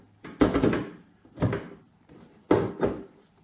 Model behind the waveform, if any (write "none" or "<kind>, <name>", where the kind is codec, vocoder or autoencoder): vocoder, BigVGAN v2